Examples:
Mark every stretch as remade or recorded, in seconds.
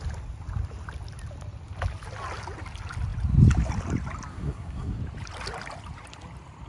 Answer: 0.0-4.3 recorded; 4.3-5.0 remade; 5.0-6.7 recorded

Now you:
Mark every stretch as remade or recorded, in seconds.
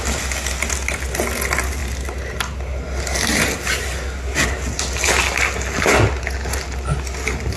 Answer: 0.0-7.6 recorded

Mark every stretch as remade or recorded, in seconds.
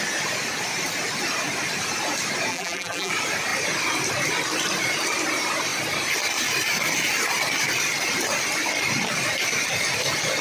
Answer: 0.0-2.5 recorded; 2.5-3.1 remade; 3.1-10.4 recorded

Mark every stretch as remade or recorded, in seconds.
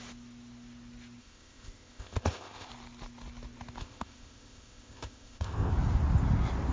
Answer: 0.0-1.2 recorded; 1.2-2.7 remade; 2.7-3.8 recorded; 3.8-5.7 remade; 5.7-6.7 recorded